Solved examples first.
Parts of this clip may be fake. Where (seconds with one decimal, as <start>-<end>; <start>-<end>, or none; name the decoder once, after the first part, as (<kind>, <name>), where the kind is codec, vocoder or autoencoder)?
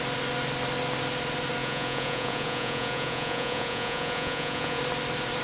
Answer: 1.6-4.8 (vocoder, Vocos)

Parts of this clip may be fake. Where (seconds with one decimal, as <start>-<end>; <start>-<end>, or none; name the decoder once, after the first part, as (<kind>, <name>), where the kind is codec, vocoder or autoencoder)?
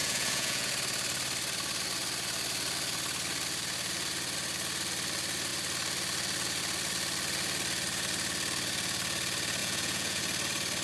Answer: 0.0-0.7 (vocoder, Vocos); 9.6-10.2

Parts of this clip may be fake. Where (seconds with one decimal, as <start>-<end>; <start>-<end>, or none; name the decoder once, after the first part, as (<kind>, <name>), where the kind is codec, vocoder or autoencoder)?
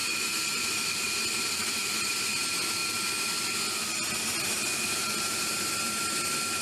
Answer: 1.4-2.8 (vocoder, BigVGAN v2); 4.8-6.6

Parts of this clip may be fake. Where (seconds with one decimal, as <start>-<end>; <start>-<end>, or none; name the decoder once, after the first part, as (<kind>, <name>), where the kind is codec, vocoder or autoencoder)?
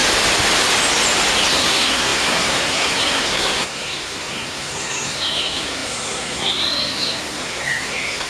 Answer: 1.5-8.3 (codec, SNAC)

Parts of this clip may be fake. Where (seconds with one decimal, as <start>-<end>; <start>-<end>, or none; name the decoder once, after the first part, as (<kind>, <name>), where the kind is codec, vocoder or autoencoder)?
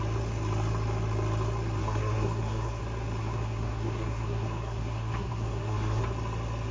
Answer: 1.8-2.8 (codec, SNAC); 3.2-6.0